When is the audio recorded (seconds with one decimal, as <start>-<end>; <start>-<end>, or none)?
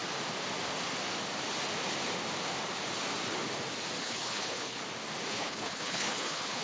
0.0-4.0; 4.8-5.3